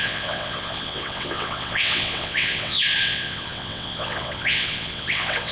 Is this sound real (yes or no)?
no